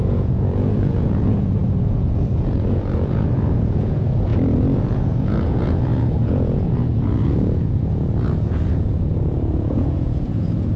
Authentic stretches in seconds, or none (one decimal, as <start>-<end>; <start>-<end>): 4.3-4.8